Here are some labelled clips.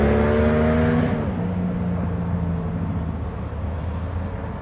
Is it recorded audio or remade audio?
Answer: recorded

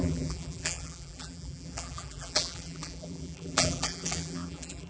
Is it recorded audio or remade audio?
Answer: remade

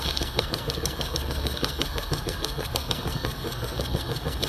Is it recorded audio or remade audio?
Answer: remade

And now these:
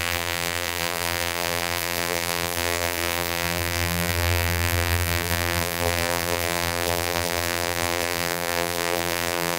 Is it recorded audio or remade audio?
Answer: remade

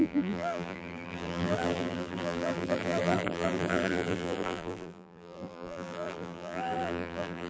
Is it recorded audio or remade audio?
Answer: remade